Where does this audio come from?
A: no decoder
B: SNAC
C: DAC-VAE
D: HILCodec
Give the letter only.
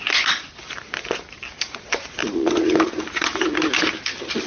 A